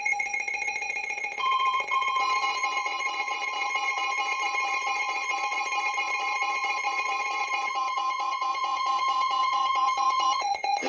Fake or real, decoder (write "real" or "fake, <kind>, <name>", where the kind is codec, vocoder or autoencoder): fake, vocoder, Vocos